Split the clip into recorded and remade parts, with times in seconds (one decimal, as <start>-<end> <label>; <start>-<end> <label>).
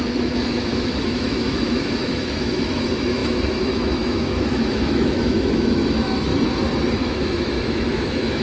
0.0-6.3 remade; 6.3-6.9 recorded; 6.9-8.4 remade